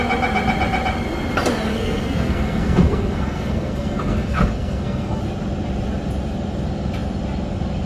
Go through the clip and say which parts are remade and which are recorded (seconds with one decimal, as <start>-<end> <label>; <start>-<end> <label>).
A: 0.0-1.7 recorded; 1.7-5.2 remade; 5.2-7.9 recorded